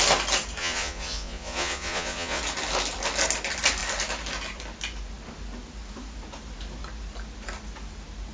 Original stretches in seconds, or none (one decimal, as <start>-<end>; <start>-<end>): 0.0-0.6; 2.4-8.3